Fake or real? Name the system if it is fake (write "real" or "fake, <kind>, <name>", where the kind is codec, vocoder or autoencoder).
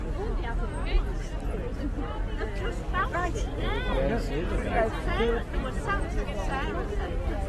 real